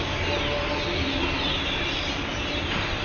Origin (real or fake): real